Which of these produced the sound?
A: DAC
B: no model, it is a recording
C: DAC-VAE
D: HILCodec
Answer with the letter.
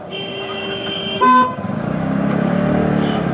A